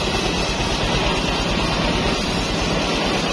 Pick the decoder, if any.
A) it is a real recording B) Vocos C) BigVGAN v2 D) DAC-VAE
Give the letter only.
A